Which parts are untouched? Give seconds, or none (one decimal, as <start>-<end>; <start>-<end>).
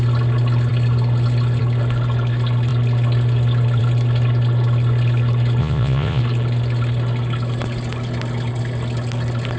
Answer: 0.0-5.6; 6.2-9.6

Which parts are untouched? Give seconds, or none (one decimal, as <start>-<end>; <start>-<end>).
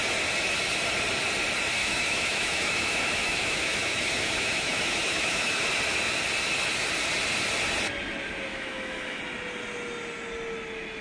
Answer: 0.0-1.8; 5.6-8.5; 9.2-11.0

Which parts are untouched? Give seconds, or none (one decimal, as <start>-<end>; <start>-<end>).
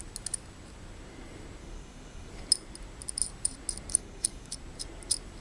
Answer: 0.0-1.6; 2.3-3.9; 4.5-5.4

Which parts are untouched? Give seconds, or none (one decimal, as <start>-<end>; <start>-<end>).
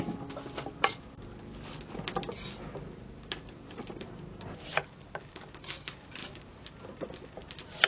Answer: 0.0-7.9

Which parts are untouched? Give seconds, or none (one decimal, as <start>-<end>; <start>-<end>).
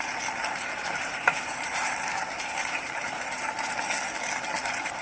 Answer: 0.0-0.8; 3.8-5.0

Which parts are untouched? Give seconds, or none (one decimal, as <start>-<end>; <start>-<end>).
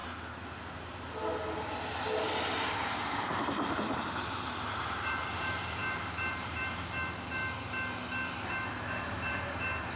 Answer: 0.0-2.2; 7.4-8.9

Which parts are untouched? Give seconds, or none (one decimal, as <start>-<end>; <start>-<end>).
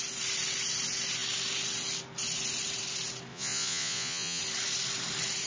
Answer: 0.0-3.3; 4.4-5.5